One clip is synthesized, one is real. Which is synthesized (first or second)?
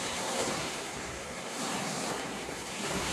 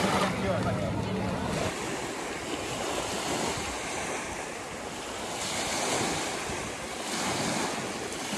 first